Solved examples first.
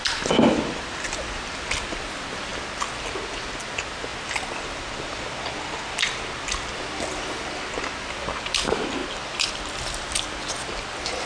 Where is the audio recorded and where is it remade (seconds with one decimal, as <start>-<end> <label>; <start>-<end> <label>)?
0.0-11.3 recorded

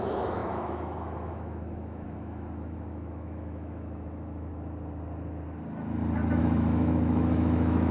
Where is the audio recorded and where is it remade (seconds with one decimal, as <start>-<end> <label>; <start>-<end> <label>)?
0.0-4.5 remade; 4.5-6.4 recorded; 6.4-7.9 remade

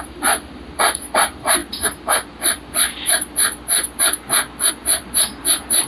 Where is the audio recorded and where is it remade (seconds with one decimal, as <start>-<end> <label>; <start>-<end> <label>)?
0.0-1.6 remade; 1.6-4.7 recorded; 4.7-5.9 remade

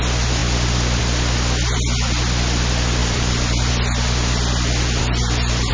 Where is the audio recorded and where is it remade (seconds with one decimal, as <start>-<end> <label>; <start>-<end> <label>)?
0.0-3.0 recorded; 3.0-3.7 remade; 3.7-5.0 recorded; 5.0-5.7 remade